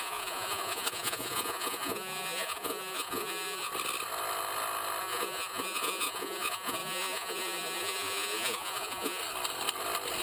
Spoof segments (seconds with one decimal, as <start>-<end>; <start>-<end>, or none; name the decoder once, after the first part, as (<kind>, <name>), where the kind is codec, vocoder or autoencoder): 0.0-3.7 (vocoder, Vocos); 5.0-9.2